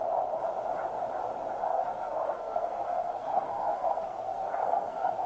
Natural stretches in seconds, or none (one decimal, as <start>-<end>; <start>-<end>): 0.0-1.7